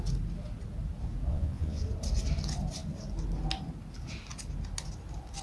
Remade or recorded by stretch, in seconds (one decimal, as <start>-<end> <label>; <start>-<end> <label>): 0.0-1.3 recorded; 1.3-1.8 remade; 1.8-5.4 recorded